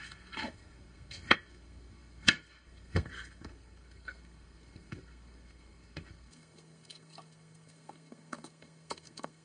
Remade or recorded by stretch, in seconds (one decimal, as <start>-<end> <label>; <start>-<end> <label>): 0.0-9.4 remade